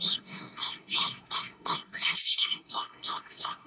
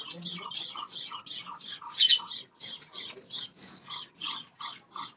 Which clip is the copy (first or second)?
first